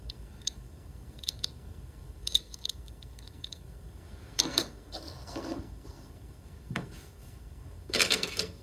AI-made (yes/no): yes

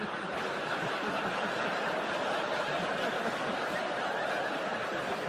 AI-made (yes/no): no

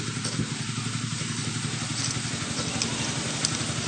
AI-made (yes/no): no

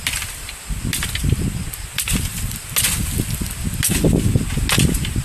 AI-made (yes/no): no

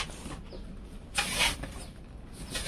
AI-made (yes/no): no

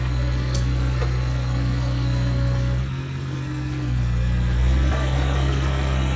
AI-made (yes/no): yes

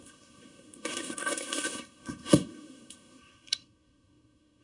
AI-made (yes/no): yes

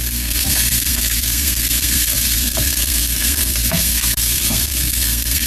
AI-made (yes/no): yes